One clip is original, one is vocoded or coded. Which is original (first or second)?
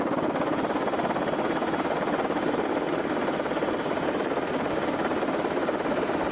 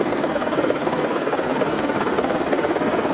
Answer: first